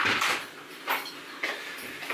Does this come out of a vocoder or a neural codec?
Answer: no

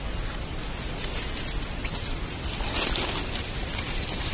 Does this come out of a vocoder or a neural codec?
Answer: no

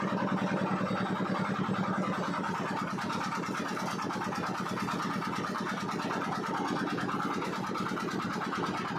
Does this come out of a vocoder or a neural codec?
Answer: no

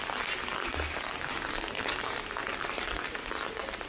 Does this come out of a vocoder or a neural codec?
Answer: no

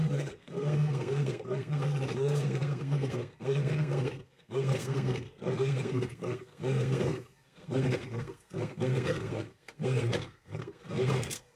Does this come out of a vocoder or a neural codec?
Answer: yes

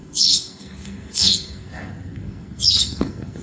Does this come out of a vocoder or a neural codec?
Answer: yes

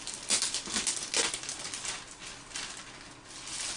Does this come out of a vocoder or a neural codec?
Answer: no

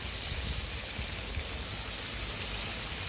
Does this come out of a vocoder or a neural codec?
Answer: no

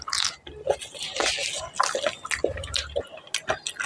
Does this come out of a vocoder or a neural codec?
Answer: no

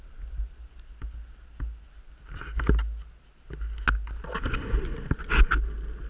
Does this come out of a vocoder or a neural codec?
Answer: no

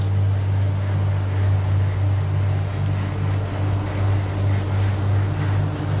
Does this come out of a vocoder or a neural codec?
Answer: no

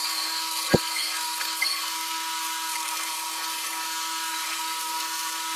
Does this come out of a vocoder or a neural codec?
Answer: yes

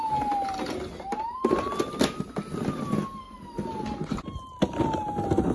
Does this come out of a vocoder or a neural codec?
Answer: no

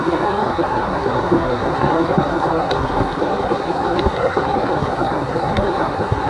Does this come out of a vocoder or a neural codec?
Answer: yes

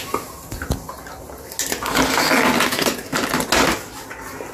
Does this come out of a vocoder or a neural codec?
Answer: no